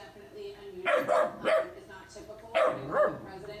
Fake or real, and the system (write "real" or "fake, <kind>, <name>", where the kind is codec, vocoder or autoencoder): real